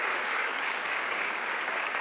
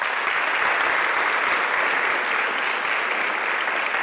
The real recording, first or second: second